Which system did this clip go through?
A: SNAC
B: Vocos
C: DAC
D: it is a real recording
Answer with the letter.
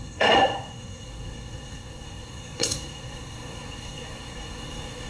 A